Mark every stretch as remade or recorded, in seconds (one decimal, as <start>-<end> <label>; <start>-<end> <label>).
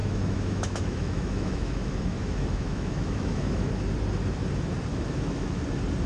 0.0-3.7 remade; 3.7-4.9 recorded; 4.9-5.6 remade; 5.6-6.1 recorded